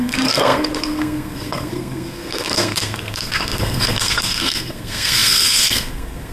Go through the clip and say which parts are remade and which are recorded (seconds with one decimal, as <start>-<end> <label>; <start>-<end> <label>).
0.0-6.3 remade